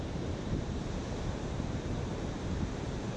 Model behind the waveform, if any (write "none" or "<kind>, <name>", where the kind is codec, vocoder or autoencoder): vocoder, BigVGAN v2